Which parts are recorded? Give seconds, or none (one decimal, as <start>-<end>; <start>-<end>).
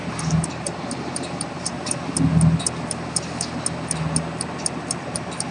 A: 0.0-0.5; 1.7-5.0